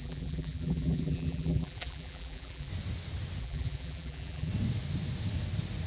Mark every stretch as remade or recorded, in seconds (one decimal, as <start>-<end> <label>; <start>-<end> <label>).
0.0-2.7 remade; 2.7-3.4 recorded; 3.4-4.5 remade; 4.5-5.9 recorded